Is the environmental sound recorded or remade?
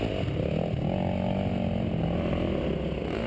recorded